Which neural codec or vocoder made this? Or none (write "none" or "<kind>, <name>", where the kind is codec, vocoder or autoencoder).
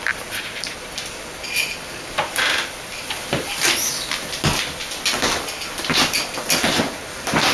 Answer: none